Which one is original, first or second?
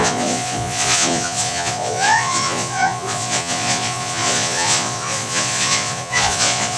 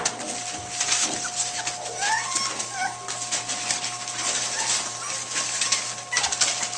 second